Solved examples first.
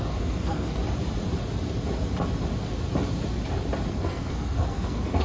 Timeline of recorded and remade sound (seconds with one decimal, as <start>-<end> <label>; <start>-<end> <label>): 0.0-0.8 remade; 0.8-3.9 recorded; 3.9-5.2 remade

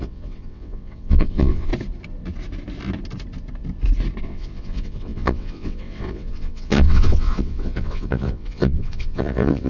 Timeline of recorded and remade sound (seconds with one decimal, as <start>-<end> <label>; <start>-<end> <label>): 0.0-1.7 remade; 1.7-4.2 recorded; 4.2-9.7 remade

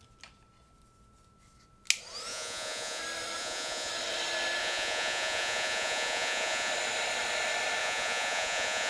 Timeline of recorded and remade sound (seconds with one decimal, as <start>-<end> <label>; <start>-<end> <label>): 0.0-2.3 recorded; 2.3-3.0 remade; 3.0-3.4 recorded; 3.4-3.9 remade; 3.9-4.6 recorded; 4.6-6.7 remade; 6.7-7.8 recorded; 7.8-8.9 remade

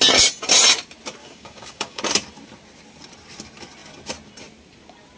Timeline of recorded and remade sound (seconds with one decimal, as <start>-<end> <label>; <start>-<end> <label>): 0.0-1.2 recorded; 1.2-2.0 remade; 2.0-5.2 recorded

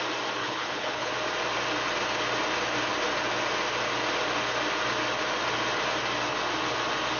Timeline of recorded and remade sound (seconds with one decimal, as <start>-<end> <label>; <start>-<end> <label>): 0.0-0.4 recorded; 0.4-1.1 remade; 1.1-7.2 recorded

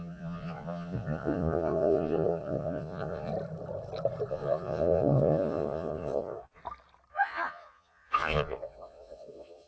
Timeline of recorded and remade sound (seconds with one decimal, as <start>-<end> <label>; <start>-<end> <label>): 0.0-3.3 remade; 3.3-4.3 recorded; 4.3-6.6 remade; 6.6-7.1 recorded; 7.1-9.7 remade